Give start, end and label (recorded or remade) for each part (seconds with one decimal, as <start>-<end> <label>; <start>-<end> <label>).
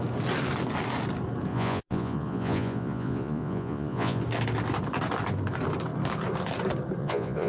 0.0-1.5 recorded; 1.5-4.2 remade; 4.2-7.0 recorded; 7.0-7.5 remade